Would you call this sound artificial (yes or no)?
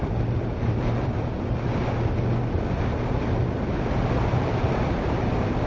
no